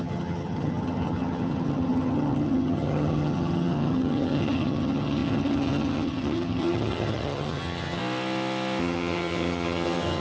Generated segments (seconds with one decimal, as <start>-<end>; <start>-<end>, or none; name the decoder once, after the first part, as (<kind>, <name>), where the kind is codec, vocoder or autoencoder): 0.0-8.0 (vocoder, HiFi-GAN); 8.8-10.2